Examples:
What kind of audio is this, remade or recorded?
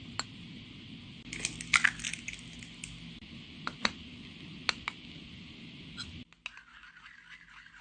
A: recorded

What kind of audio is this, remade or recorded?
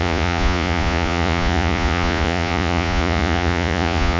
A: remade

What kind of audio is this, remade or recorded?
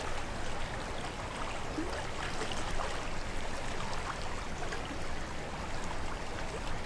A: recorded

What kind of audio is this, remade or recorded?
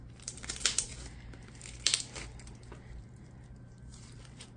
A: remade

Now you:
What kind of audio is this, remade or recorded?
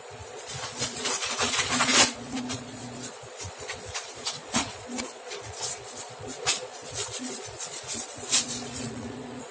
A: remade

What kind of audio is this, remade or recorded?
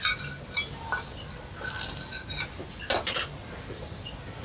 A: recorded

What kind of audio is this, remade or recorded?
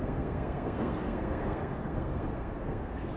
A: remade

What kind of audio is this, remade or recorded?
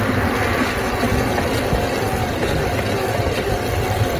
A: recorded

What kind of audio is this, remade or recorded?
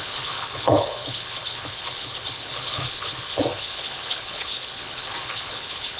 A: remade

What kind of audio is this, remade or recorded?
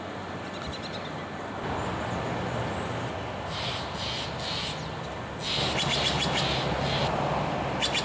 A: recorded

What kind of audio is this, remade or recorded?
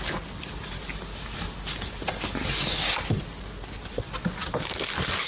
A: recorded